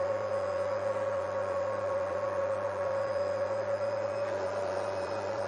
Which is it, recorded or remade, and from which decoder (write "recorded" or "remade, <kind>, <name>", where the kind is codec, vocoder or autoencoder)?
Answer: remade, vocoder, Vocos